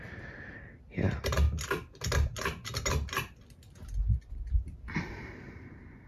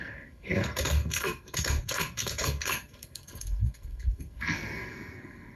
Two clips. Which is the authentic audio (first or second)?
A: first